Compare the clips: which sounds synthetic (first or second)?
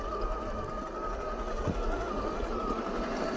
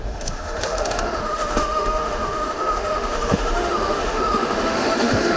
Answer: second